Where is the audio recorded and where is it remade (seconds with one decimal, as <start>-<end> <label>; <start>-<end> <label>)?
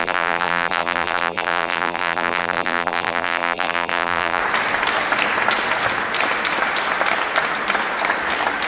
0.0-4.4 remade; 4.4-8.7 recorded